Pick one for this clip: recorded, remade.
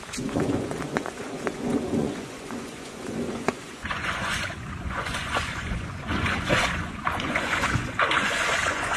remade